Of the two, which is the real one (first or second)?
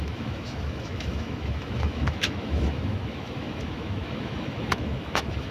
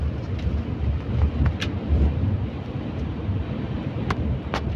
second